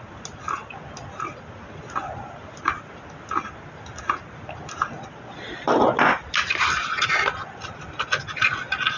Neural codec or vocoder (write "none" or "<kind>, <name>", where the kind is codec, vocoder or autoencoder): none